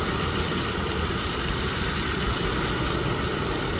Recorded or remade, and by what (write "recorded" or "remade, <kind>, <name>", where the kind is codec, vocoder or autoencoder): remade, vocoder, BigVGAN v2